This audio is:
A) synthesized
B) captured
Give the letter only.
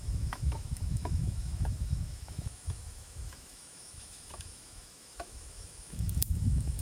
A